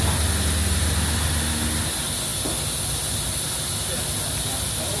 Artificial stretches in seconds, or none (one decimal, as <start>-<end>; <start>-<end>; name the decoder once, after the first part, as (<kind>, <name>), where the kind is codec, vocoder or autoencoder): none

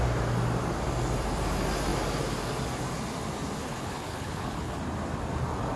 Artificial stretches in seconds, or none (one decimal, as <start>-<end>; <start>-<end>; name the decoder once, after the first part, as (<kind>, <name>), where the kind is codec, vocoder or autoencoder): 3.6-4.8 (codec, HILCodec)